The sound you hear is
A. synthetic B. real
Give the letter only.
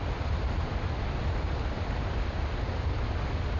B